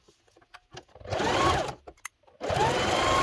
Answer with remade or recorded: recorded